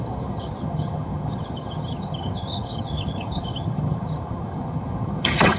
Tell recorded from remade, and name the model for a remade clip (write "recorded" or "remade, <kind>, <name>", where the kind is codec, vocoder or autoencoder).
remade, vocoder, HiFi-GAN